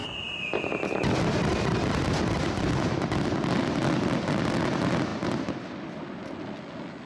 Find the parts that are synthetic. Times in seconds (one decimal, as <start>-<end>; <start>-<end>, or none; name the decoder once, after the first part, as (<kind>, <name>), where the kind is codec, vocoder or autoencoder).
none